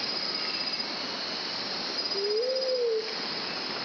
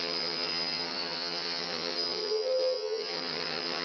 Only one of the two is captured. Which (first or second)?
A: first